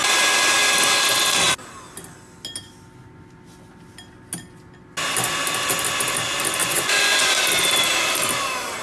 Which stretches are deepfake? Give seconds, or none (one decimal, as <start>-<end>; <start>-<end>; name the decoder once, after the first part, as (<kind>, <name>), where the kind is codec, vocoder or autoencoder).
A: 6.6-7.3 (vocoder, Vocos)